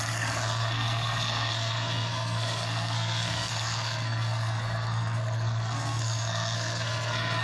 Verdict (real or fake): fake